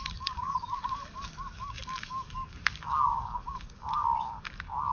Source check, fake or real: fake